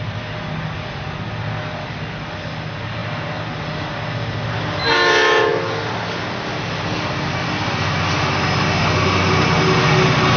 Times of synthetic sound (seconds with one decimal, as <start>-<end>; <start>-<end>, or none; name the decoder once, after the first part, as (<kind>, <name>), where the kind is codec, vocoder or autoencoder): none

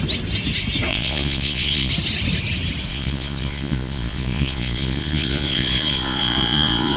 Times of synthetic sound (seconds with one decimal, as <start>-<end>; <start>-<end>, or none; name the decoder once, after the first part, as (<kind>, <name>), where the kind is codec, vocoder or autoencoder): 0.9-1.9 (vocoder, Vocos); 2.9-7.0